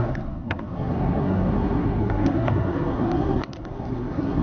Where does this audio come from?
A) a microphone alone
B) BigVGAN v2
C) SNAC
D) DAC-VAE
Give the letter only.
C